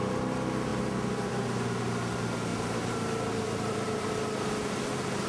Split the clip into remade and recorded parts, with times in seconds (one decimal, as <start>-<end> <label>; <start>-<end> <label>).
0.0-2.5 recorded; 2.5-4.1 remade; 4.1-5.3 recorded